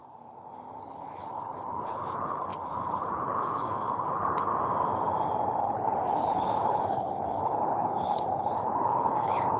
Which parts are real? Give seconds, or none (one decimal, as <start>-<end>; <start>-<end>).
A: 0.0-0.8; 4.5-5.6